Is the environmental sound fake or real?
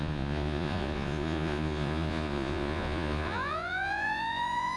fake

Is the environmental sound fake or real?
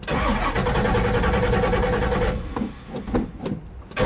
real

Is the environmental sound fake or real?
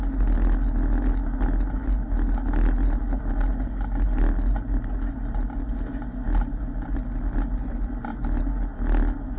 real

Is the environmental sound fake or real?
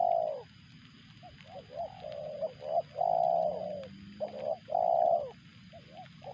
real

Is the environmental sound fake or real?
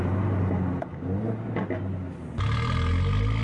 real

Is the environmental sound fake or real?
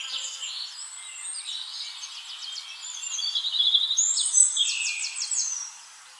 real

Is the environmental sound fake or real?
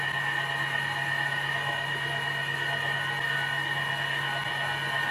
real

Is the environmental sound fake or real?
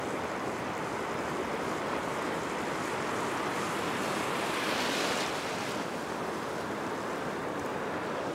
real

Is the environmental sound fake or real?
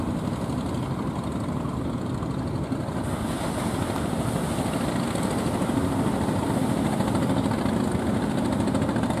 real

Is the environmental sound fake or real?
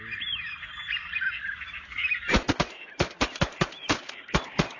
fake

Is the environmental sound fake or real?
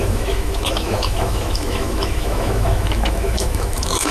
fake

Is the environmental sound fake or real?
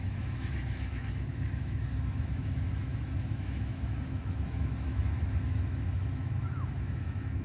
fake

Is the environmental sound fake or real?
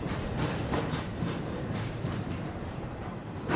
fake